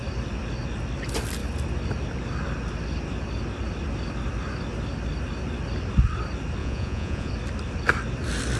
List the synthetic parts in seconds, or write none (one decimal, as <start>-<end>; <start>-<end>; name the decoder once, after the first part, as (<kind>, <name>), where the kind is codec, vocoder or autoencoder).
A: 6.6-7.3 (vocoder, Vocos)